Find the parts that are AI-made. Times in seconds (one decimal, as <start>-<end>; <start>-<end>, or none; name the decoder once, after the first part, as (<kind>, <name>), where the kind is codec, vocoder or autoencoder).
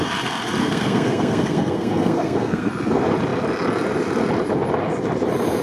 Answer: 0.6-2.7 (codec, SNAC)